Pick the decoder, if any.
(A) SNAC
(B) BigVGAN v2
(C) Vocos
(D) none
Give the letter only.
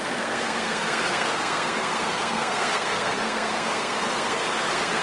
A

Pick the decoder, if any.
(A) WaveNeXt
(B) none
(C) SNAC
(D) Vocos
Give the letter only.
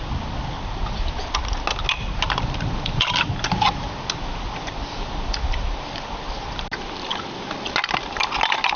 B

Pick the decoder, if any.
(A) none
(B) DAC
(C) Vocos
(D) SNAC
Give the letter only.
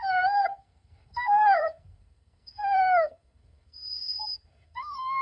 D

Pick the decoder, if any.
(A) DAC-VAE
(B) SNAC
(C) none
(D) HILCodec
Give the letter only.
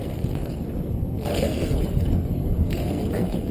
B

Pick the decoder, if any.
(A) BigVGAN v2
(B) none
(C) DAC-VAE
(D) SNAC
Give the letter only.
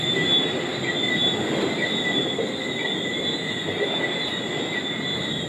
B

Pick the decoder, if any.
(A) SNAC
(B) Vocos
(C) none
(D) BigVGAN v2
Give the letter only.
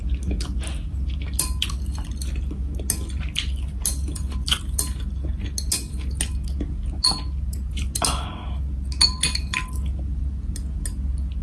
C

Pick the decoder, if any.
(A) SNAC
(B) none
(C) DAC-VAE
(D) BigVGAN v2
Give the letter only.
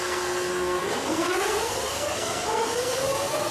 A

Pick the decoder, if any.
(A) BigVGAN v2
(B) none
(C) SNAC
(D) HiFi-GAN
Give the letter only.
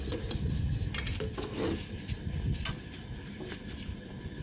B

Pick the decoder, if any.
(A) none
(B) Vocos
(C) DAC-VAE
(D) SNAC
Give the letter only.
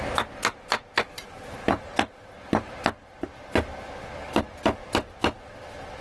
A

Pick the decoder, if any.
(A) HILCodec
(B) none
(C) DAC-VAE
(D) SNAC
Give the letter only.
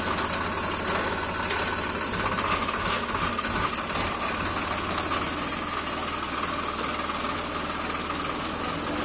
B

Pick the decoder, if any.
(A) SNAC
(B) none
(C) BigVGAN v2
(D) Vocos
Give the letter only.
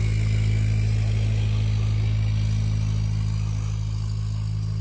B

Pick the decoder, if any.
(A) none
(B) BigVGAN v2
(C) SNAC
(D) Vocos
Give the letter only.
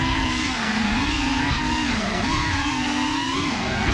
C